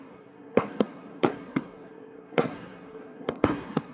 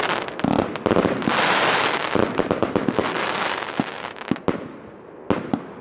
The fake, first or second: first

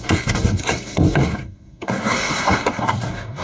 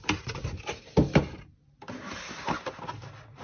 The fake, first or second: first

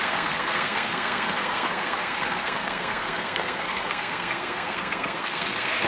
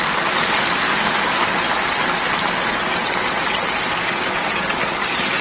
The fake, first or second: first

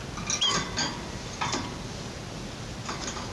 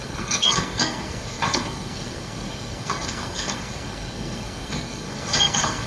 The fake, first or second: second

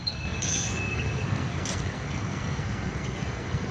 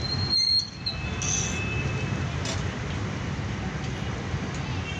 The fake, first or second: first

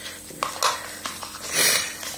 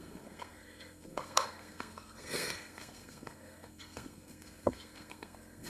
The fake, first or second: second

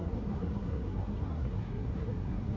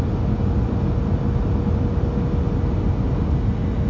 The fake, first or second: first